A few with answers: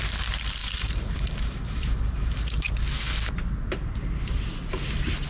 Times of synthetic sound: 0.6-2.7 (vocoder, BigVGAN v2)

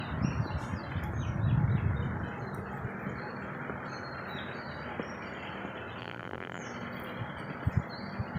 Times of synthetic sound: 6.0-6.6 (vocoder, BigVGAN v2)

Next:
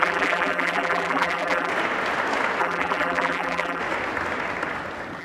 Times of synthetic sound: 0.0-1.7 (vocoder, BigVGAN v2); 2.6-3.8

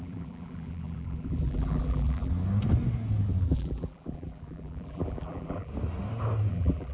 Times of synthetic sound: 0.0-2.3 (vocoder, BigVGAN v2); 3.4-5.7; 6.5-6.9

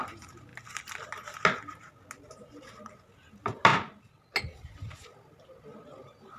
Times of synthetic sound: none

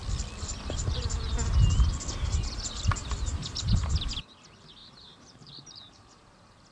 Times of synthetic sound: 4.8-5.5 (vocoder, BigVGAN v2)

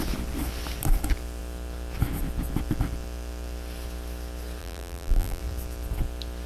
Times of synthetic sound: 4.6-5.4 (vocoder, BigVGAN v2)

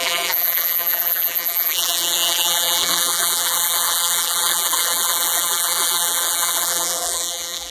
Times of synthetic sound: 0.0-7.7 (vocoder, BigVGAN v2)